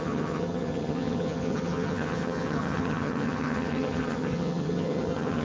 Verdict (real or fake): fake